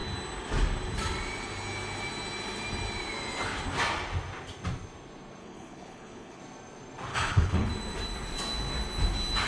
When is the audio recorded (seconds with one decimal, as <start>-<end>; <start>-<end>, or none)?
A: 0.0-5.4; 6.4-7.1; 7.7-9.5